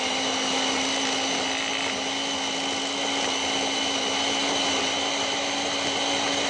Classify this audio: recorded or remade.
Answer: recorded